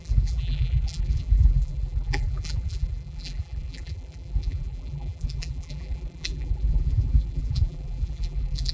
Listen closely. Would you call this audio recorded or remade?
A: remade